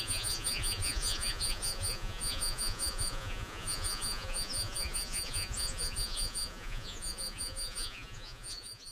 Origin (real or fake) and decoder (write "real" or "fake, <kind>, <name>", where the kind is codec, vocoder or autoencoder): fake, vocoder, Vocos